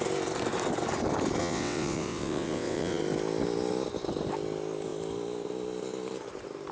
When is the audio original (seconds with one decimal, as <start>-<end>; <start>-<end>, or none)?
0.0-1.4; 3.0-6.7